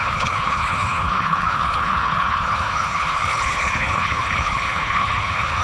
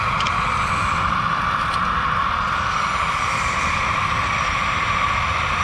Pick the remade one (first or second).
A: first